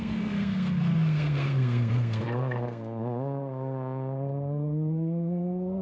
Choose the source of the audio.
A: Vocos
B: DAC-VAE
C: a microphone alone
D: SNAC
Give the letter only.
D